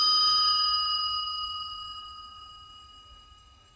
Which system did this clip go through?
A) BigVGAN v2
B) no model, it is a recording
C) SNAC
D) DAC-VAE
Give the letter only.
D